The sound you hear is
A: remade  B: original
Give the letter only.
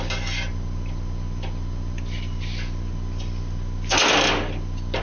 B